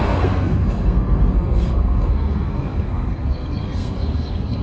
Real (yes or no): no